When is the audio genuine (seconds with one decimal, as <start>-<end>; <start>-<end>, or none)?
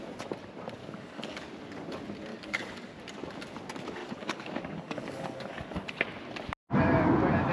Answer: 0.0-0.8; 1.5-2.3; 3.0-4.0; 5.8-7.5